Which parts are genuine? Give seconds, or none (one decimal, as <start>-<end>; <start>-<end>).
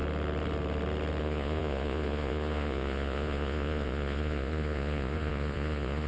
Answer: 0.0-1.2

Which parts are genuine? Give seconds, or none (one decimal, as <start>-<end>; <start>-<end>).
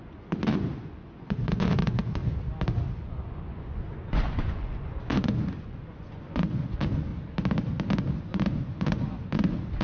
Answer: 2.2-2.9; 7.1-8.2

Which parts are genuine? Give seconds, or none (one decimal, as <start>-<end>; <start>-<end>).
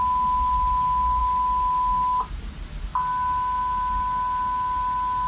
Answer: 0.0-5.3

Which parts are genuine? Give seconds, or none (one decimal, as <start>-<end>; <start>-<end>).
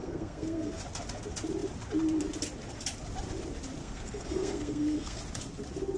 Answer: 0.8-3.8; 5.2-6.0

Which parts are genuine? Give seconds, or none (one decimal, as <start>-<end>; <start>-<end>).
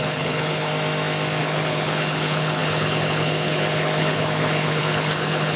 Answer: 0.7-1.4